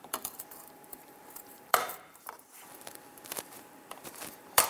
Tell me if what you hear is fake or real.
fake